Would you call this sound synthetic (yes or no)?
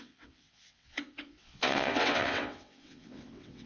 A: yes